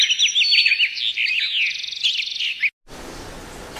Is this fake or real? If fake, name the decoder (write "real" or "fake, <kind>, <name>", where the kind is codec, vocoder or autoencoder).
real